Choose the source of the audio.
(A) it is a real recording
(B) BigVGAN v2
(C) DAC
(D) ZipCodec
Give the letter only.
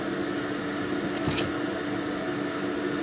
A